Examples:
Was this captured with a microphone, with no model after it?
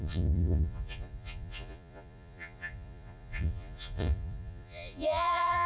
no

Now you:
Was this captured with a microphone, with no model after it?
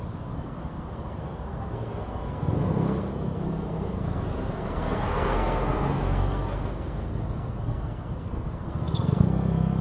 no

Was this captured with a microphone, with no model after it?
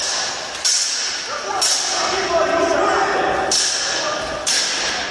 yes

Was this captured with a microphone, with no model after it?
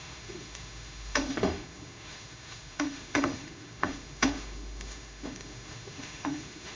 no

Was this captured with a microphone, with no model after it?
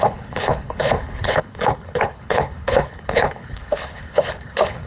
no